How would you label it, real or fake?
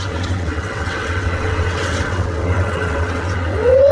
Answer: fake